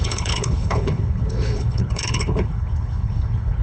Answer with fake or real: fake